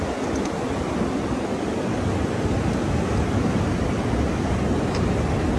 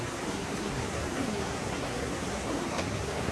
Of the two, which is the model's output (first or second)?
second